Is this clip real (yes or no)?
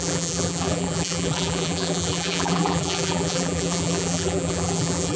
no